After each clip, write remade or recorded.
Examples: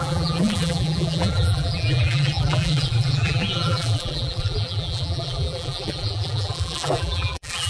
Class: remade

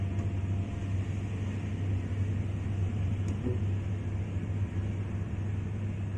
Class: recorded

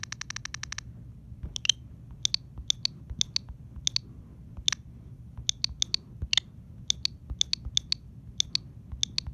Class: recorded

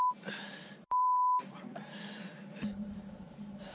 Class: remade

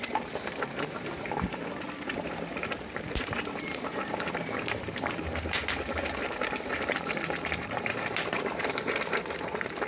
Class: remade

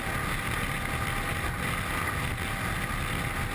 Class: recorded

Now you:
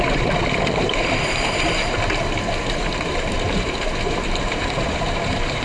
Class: remade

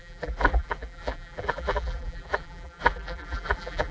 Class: remade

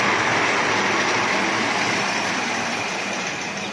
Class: recorded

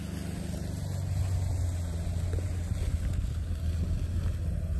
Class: recorded